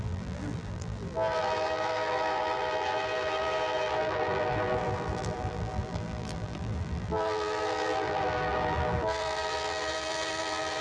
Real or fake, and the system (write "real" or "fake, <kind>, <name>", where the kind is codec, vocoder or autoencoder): fake, vocoder, BigVGAN v2